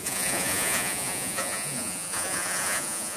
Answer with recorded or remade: remade